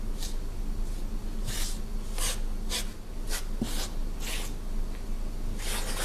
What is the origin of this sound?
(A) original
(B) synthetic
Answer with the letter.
A